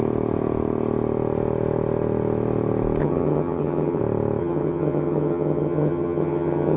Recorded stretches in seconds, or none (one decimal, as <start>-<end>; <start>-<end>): 0.0-3.0; 4.0-4.4